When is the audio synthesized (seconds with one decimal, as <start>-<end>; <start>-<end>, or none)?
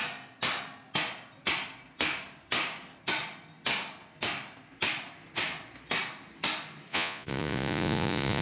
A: 6.9-8.4